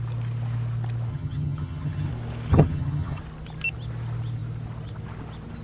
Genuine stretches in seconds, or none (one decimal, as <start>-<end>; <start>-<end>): 0.0-1.1; 2.1-2.5; 3.2-5.6